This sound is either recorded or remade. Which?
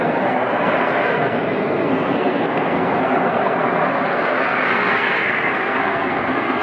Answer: remade